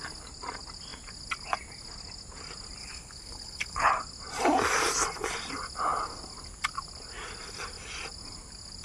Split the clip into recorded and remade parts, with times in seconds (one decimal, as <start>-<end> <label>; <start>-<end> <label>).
0.0-2.8 recorded; 2.8-3.9 remade; 3.9-8.8 recorded